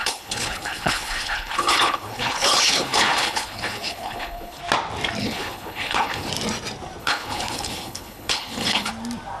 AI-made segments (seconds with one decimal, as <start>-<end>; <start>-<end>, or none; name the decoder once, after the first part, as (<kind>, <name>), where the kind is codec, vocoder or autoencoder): 0.0-4.6 (codec, HILCodec); 5.2-6.3; 7.0-8.9